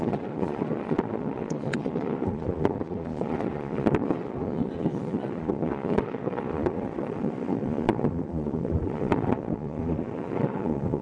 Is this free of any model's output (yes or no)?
no